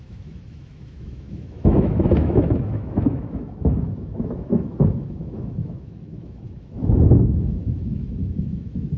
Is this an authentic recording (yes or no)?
no